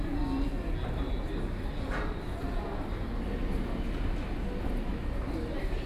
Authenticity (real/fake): real